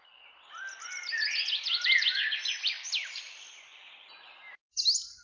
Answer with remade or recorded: recorded